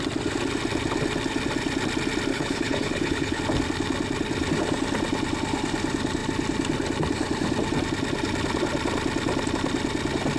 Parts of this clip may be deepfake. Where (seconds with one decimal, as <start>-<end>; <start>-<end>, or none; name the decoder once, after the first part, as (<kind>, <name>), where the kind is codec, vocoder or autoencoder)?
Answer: 2.3-3.4 (codec, HILCodec)